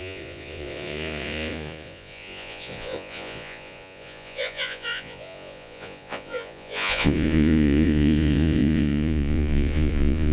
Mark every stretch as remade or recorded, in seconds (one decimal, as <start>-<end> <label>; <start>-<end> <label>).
0.0-10.3 remade